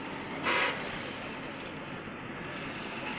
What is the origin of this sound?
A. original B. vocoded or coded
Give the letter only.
A